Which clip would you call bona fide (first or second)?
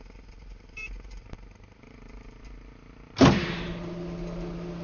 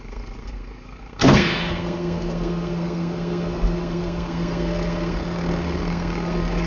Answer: first